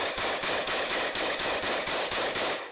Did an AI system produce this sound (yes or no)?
yes